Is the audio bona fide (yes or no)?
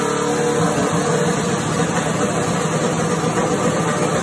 yes